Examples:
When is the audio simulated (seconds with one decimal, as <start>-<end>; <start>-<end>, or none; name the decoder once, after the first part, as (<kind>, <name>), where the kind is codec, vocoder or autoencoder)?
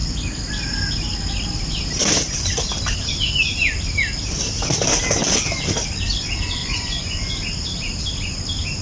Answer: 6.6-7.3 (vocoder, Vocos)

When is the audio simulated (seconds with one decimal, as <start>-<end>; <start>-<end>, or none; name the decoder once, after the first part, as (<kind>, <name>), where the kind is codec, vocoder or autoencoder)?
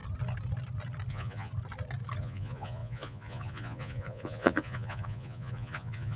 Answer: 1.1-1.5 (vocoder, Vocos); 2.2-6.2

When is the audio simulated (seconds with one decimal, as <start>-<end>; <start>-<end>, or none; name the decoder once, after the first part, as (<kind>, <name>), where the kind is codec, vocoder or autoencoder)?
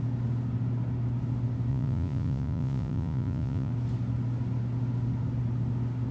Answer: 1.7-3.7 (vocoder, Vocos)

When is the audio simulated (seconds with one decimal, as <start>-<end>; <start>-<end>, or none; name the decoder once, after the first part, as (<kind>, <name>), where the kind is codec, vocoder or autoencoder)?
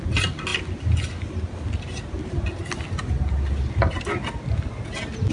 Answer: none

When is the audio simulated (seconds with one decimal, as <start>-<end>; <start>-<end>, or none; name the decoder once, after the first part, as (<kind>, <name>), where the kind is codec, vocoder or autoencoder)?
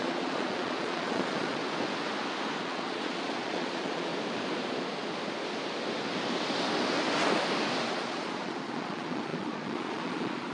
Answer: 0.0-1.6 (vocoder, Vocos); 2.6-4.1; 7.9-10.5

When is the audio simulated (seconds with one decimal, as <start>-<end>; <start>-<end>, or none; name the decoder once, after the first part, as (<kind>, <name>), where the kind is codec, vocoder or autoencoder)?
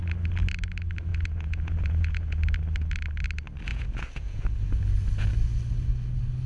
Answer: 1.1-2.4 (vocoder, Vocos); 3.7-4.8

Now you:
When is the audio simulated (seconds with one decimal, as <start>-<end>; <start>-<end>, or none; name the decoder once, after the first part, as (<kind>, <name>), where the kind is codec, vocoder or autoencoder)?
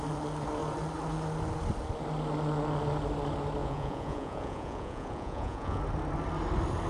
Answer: 3.6-5.8 (vocoder, Vocos)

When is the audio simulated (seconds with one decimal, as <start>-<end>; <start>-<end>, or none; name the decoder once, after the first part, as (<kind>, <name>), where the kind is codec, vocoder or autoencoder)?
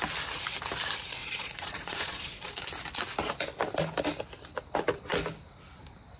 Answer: 1.2-2.6 (vocoder, Vocos)